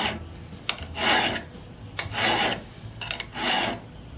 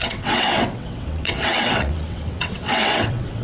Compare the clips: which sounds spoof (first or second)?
second